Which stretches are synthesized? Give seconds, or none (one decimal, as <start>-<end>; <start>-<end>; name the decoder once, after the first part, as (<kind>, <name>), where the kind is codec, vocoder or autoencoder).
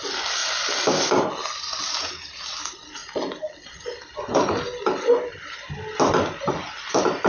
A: none